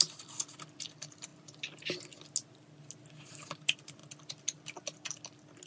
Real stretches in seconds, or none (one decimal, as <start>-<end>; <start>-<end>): 1.3-3.2; 4.0-5.7